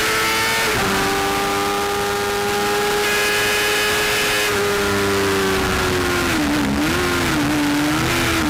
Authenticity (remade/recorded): recorded